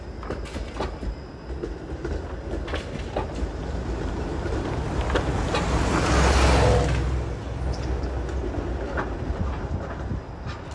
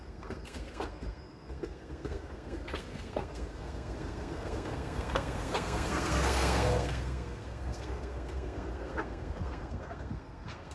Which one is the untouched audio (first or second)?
first